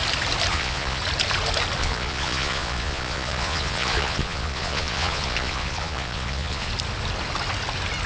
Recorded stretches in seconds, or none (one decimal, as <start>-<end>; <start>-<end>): 0.0-0.5; 1.0-1.8; 6.7-8.1